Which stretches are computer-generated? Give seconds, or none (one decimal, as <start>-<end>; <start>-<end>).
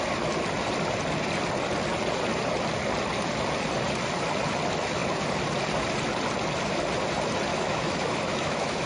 7.5-8.9